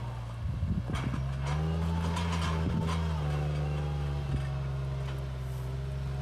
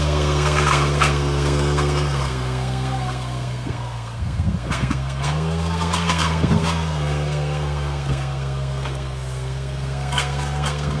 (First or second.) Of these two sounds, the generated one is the second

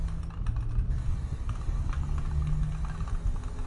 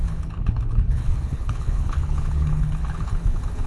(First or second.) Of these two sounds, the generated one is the second